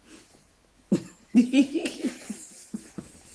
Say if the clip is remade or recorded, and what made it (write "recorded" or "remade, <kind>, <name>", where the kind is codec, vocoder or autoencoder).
remade, autoencoder, DAC-VAE